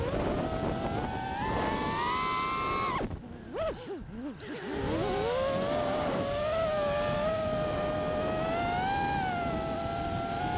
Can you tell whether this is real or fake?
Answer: real